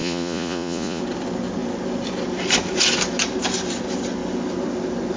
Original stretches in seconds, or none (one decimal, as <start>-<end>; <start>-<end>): 1.0-5.2